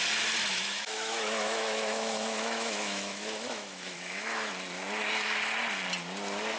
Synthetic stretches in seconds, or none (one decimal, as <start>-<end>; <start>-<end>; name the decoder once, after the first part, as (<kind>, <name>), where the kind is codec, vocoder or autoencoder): 0.5-4.5 (autoencoder, DAC-VAE)